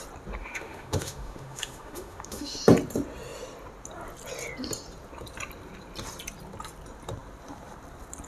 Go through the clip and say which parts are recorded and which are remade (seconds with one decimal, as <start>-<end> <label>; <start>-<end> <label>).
0.0-0.4 recorded; 0.4-2.6 remade; 2.6-8.3 recorded